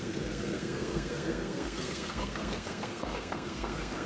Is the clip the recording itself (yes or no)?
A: no